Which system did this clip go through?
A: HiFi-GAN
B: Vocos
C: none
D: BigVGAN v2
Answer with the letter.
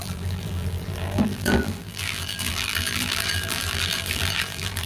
D